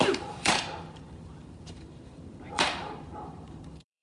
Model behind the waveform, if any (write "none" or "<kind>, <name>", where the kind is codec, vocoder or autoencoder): vocoder, BigVGAN v2